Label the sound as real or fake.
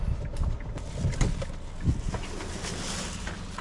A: real